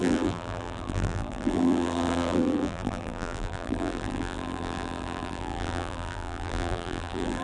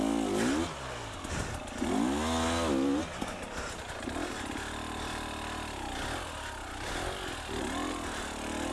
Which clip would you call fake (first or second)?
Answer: first